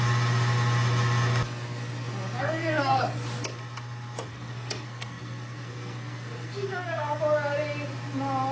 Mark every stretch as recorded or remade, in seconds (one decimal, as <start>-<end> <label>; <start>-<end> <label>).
0.0-2.4 recorded; 2.4-3.0 remade; 3.0-4.3 recorded; 4.3-7.2 remade; 7.2-8.5 recorded